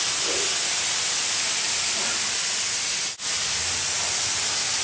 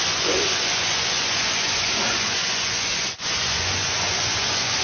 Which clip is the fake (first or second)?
second